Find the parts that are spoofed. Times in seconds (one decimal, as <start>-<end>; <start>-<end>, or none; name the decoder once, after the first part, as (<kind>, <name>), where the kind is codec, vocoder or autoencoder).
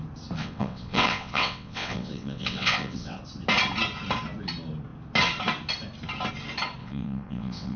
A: 0.4-3.2 (vocoder, WaveNeXt); 6.8-7.8